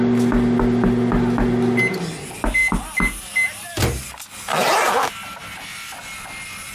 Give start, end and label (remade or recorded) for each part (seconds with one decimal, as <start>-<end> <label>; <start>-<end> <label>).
0.0-6.7 recorded